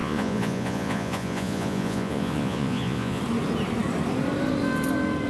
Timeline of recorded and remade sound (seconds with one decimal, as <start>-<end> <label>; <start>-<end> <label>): 0.0-3.2 remade; 3.2-5.3 recorded